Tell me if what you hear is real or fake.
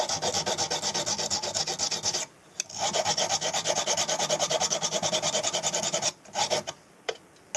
real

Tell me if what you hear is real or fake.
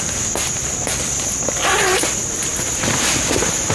real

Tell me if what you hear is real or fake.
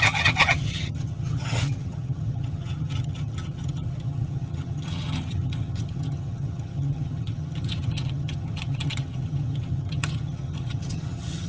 fake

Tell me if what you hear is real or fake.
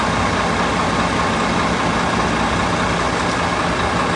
real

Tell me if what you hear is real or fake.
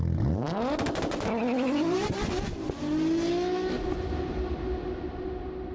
real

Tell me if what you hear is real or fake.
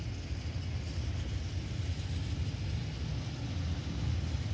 real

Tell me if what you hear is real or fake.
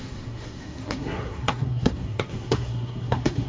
fake